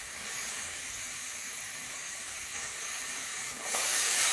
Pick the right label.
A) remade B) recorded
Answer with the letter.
A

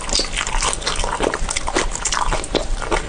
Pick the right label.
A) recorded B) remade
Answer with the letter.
A